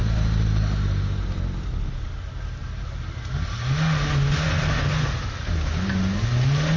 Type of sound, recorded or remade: recorded